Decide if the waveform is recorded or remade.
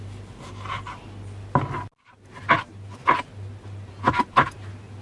recorded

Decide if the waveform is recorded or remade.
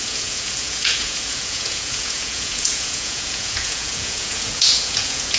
remade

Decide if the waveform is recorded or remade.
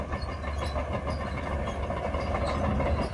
recorded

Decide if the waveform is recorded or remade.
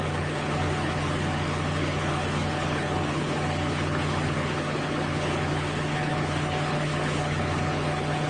remade